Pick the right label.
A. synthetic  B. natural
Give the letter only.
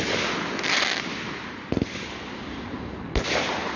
B